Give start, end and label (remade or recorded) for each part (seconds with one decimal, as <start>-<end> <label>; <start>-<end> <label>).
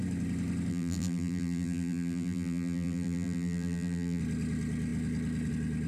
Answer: 0.0-0.7 recorded; 0.7-4.2 remade; 4.2-5.9 recorded